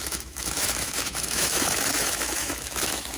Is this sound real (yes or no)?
no